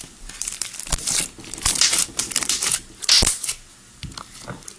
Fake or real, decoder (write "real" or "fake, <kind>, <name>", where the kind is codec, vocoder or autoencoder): real